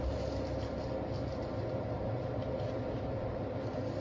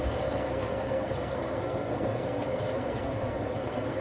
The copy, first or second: second